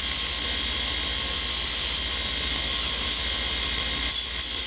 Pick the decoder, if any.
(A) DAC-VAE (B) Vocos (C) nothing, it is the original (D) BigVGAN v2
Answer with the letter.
C